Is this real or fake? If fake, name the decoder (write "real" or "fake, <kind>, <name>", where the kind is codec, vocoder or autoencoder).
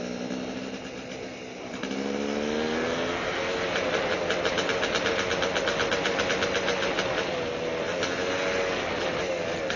real